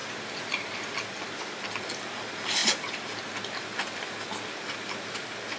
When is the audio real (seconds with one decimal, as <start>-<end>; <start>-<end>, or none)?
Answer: 0.0-5.6